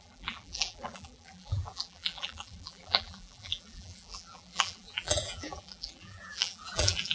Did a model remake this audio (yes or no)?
yes